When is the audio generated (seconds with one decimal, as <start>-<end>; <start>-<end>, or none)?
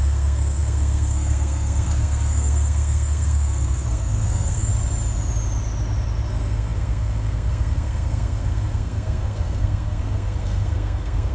0.0-4.7; 6.3-11.3